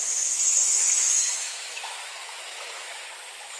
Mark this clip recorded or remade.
remade